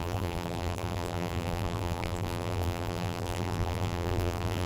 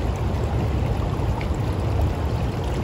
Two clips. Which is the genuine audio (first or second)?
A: second